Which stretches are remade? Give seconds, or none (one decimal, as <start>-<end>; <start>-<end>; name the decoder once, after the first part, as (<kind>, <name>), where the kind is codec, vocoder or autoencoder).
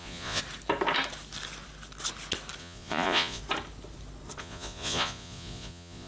0.0-0.4 (vocoder, Vocos); 2.6-3.4; 4.4-6.1